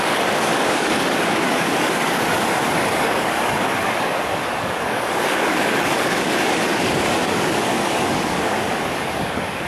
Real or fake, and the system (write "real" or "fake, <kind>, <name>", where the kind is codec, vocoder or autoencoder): fake, codec, DAC